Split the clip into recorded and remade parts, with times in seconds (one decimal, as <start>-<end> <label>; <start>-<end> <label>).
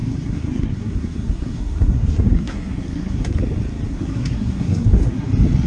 0.0-3.4 remade; 3.4-3.9 recorded; 3.9-5.3 remade; 5.3-5.7 recorded